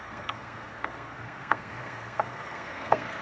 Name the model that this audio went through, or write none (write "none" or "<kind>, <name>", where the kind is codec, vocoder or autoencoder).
codec, SNAC